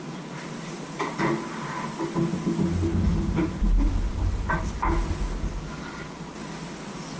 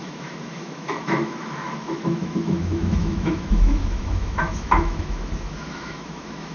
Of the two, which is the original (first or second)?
first